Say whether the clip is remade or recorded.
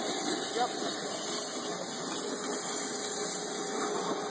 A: recorded